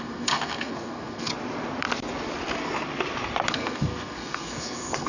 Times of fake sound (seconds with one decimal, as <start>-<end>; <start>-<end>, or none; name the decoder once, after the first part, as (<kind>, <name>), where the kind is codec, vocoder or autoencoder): 0.0-1.3 (codec, SNAC); 3.5-5.1